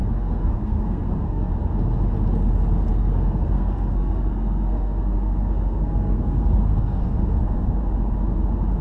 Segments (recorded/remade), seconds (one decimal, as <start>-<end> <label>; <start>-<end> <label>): 0.0-1.5 remade; 1.5-2.9 recorded; 2.9-7.8 remade; 7.8-8.8 recorded